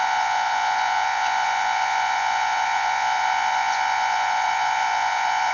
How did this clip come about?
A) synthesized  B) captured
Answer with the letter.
A